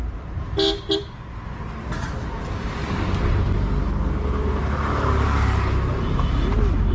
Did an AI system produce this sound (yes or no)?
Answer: no